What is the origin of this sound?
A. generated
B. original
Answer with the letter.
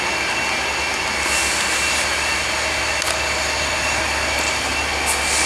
B